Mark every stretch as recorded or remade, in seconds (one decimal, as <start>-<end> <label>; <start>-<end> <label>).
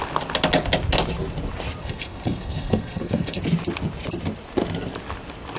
0.0-1.8 recorded; 1.8-3.4 remade; 3.4-5.6 recorded